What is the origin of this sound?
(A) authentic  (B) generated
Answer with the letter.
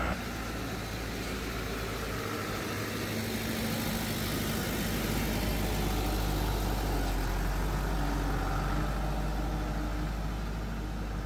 A